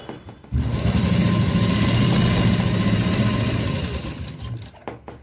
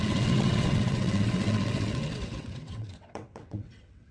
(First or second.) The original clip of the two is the first